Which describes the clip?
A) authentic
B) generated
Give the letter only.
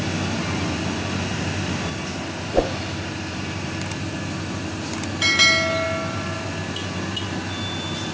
A